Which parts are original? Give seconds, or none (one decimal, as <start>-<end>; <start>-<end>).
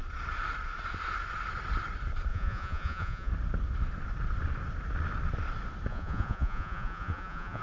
0.0-2.3; 3.3-5.9